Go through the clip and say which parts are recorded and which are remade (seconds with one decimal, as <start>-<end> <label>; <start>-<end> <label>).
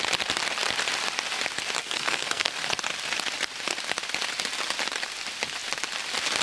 0.0-1.8 recorded; 1.8-2.5 remade; 2.5-6.4 recorded